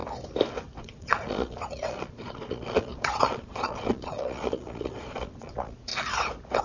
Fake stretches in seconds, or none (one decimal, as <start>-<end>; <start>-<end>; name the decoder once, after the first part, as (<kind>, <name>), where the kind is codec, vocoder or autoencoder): 0.8-5.9 (vocoder, Vocos)

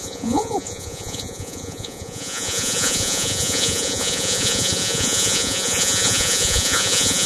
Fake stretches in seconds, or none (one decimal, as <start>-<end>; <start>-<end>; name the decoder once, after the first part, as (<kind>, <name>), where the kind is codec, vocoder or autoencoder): 0.0-7.3 (vocoder, Vocos)

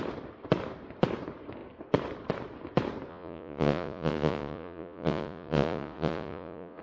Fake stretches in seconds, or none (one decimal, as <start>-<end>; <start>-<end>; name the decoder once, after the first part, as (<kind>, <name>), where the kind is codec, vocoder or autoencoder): 3.1-6.8 (vocoder, Vocos)